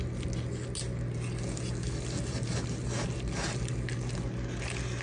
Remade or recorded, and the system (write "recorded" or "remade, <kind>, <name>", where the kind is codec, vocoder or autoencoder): recorded